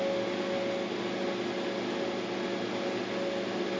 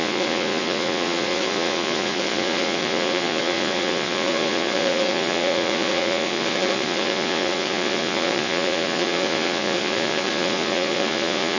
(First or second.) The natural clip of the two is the first